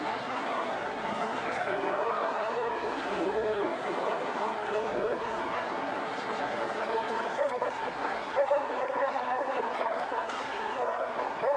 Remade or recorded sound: remade